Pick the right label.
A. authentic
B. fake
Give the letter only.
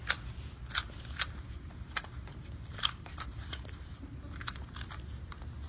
A